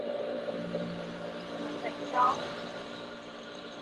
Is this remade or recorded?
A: remade